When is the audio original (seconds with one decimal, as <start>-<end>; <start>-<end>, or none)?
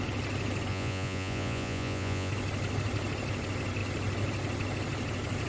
0.0-0.7; 2.3-5.5